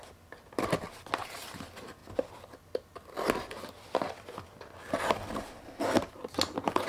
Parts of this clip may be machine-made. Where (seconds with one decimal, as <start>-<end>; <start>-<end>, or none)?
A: none